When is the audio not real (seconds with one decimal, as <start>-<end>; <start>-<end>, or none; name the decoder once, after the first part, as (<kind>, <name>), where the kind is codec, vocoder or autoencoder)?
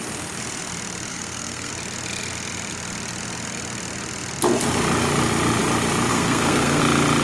1.1-1.7 (codec, SNAC); 6.1-6.8